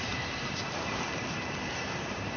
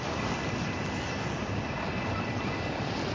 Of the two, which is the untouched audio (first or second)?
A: second